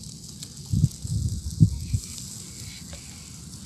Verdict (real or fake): real